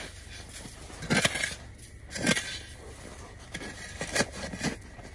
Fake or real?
real